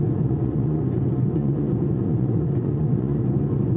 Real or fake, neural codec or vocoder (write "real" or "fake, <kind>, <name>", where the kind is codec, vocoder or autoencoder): fake, vocoder, Vocos